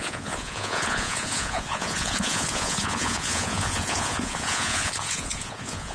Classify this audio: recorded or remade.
remade